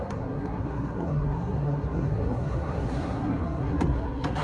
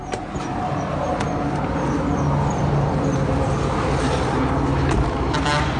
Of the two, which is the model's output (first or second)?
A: first